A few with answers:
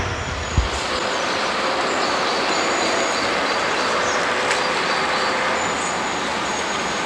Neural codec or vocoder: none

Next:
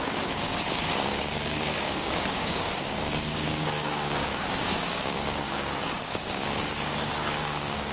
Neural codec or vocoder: codec, DAC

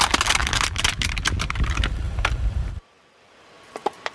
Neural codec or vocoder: none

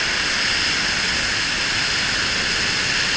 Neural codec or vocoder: none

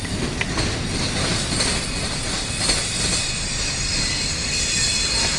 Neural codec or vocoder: none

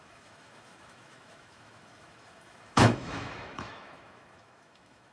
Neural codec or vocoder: autoencoder, DAC-VAE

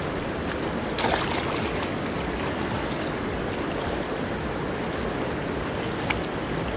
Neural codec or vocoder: none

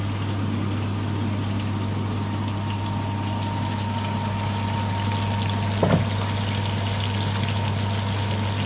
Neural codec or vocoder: none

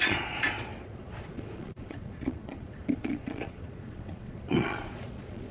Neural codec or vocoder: vocoder, Vocos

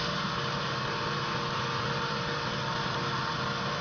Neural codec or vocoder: none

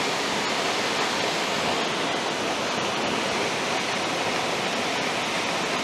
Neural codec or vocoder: none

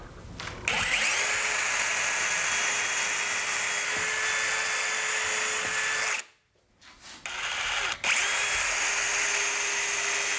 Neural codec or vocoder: none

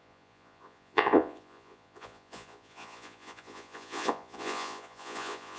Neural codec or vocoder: vocoder, Vocos